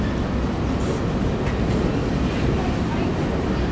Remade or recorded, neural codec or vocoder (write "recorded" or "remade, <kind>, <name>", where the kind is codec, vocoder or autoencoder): recorded